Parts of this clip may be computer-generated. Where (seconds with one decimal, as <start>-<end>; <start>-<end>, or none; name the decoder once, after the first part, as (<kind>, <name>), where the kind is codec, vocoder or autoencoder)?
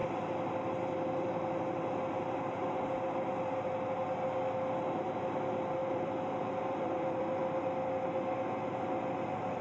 5.8-7.4 (vocoder, BigVGAN v2)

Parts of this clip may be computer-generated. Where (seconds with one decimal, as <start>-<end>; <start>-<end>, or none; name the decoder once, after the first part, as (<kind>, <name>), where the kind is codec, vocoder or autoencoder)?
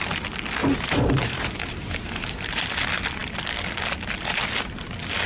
0.6-2.7 (vocoder, BigVGAN v2)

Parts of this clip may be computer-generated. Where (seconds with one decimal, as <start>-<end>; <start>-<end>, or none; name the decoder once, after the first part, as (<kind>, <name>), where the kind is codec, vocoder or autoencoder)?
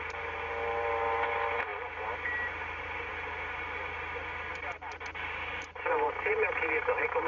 none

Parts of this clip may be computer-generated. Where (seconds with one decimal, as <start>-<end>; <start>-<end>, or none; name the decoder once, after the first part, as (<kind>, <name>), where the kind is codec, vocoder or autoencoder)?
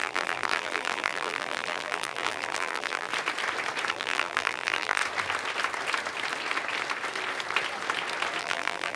0.0-3.1 (vocoder, BigVGAN v2); 3.9-5.0; 8.4-9.0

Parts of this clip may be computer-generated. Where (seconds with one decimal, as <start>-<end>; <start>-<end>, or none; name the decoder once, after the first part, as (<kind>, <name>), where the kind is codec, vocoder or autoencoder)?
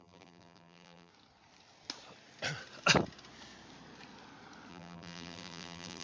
0.0-1.1 (vocoder, BigVGAN v2); 4.7-6.0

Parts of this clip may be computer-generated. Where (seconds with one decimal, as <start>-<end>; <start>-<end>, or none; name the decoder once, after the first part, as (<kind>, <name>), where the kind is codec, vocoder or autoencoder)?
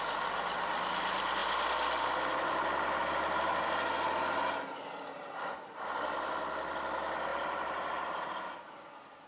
7.3-8.3 (vocoder, BigVGAN v2)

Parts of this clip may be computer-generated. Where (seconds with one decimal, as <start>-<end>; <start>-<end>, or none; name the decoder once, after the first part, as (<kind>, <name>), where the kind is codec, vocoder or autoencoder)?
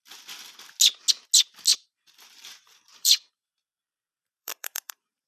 1.7-3.5 (vocoder, BigVGAN v2); 4.2-5.3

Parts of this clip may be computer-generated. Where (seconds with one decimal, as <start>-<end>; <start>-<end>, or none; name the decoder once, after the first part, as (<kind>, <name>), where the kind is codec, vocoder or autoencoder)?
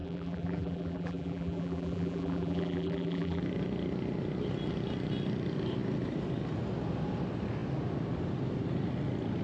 0.0-3.4 (vocoder, BigVGAN v2)